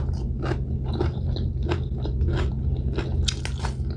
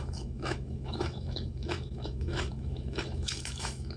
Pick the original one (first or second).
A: first